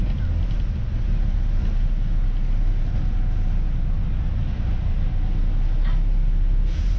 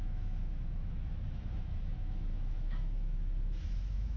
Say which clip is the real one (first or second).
first